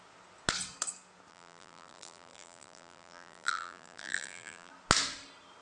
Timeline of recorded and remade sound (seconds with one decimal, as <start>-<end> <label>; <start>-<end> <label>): 0.0-1.3 recorded; 1.3-4.7 remade; 4.7-5.6 recorded